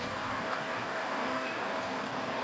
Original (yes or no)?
no